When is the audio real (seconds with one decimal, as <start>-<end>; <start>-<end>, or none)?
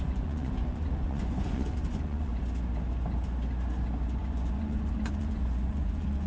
2.3-4.2